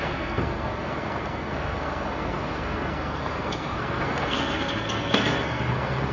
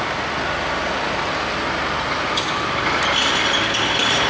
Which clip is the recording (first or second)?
second